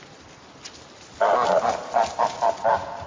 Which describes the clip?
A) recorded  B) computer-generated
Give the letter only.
A